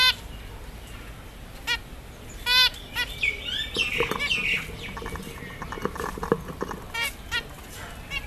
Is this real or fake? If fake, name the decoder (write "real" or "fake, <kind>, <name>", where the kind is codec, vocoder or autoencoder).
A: real